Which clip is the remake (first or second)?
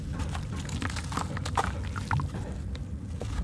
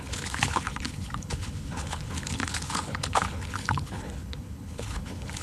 second